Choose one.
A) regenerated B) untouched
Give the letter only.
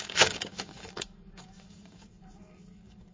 A